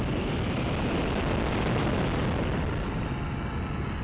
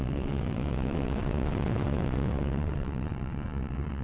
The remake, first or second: second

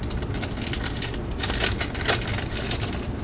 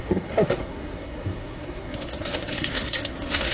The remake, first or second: second